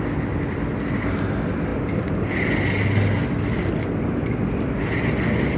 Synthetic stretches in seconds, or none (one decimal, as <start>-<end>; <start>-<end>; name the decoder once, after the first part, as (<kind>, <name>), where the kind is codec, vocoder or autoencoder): none